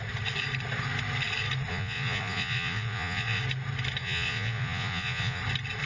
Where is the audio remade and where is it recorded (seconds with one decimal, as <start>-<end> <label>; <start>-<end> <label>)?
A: 0.0-1.7 recorded; 1.7-3.4 remade; 3.4-4.0 recorded; 4.0-5.4 remade; 5.4-5.9 recorded